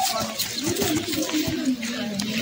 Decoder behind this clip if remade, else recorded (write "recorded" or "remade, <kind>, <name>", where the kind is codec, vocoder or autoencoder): recorded